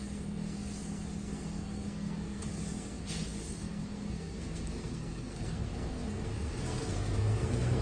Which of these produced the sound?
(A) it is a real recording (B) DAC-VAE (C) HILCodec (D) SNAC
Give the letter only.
D